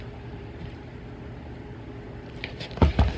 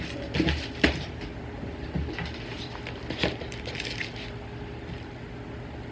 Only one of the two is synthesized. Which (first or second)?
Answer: first